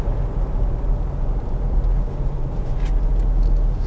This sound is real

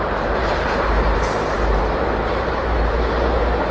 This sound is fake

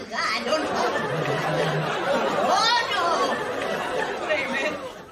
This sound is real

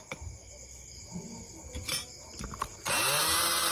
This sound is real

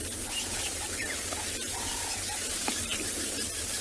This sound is fake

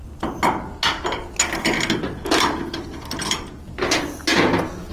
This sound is real